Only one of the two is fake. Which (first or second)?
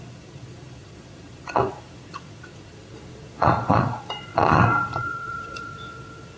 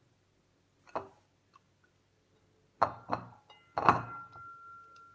first